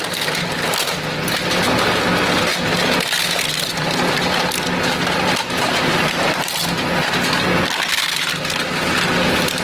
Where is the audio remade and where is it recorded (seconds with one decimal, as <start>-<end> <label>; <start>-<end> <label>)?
0.0-5.9 recorded; 5.9-6.9 remade; 6.9-9.6 recorded